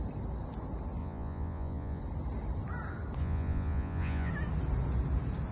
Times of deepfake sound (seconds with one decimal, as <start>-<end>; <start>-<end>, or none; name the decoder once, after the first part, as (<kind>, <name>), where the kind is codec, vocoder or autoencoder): 1.0-2.0 (vocoder, Vocos); 3.2-4.3